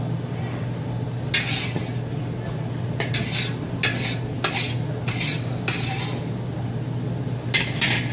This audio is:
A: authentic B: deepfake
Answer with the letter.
A